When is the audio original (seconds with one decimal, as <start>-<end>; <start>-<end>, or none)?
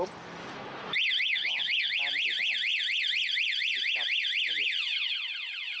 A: 0.0-1.3; 1.9-5.8